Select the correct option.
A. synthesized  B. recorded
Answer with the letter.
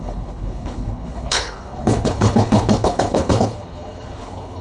A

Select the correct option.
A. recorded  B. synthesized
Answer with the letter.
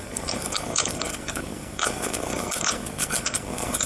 B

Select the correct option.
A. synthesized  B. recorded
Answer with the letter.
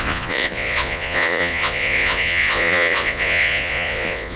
A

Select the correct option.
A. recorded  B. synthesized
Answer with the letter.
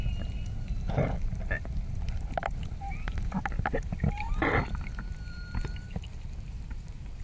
B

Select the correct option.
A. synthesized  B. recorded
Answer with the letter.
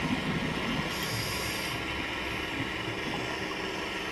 B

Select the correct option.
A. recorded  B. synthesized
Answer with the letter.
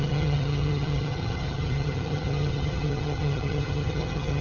B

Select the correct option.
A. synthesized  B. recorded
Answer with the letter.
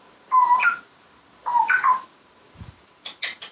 B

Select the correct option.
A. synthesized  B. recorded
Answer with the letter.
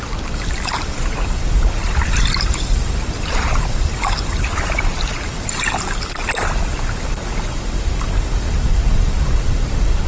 B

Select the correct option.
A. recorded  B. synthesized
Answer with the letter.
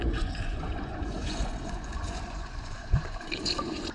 B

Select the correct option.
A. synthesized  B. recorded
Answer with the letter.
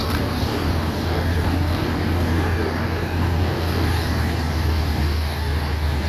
A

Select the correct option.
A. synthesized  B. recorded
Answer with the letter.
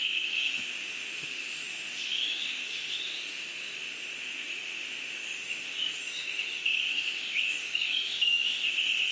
A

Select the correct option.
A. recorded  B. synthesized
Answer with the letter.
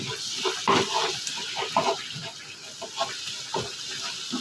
A